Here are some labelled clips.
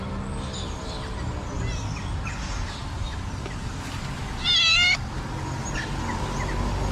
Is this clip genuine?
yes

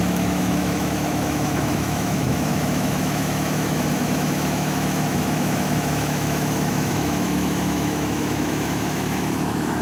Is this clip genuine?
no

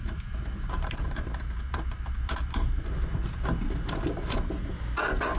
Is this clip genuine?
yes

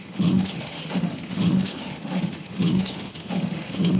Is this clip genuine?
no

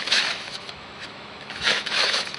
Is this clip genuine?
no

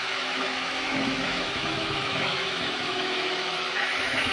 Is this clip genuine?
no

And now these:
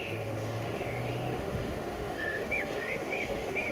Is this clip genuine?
no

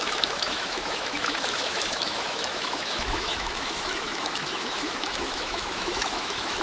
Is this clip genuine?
no